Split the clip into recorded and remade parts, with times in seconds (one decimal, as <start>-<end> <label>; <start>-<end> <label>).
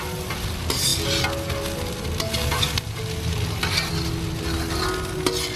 0.0-5.6 recorded